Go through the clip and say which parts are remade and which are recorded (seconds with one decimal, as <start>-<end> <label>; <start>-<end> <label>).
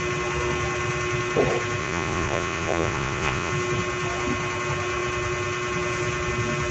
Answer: 0.0-1.8 recorded; 1.8-3.5 remade; 3.5-6.7 recorded